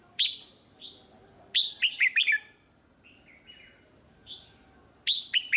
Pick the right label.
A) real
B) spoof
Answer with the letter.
A